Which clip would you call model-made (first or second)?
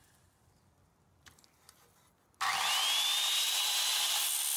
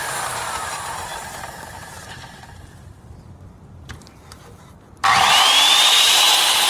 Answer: second